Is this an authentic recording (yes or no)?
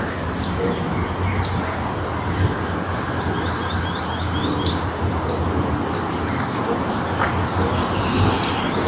yes